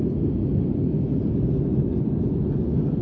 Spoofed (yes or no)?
no